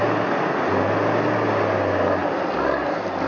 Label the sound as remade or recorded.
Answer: recorded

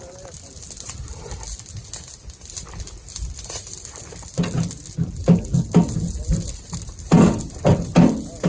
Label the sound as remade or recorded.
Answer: recorded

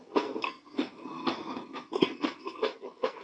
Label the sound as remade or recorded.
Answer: remade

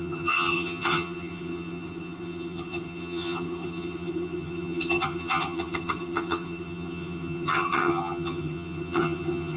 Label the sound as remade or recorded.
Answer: remade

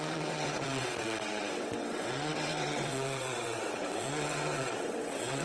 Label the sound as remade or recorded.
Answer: remade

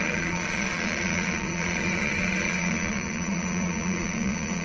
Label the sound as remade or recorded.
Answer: remade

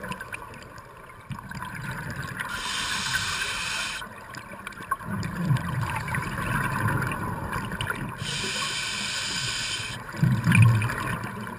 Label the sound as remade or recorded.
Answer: recorded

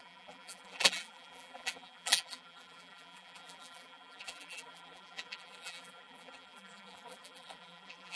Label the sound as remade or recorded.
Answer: remade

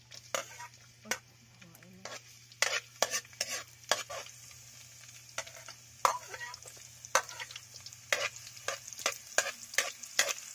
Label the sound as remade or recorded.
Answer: recorded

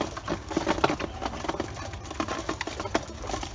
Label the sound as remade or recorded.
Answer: recorded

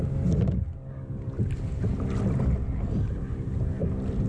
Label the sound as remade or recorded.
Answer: recorded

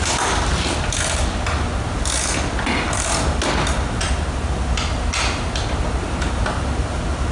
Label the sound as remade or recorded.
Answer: recorded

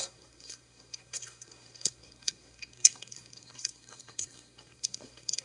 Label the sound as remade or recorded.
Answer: remade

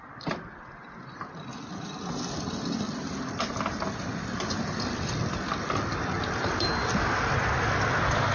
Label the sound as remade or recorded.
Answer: recorded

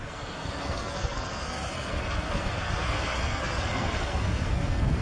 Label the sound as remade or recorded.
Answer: remade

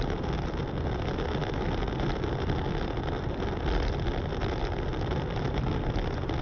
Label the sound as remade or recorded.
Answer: recorded